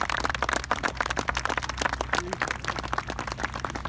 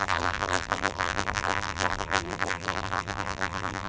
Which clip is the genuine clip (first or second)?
first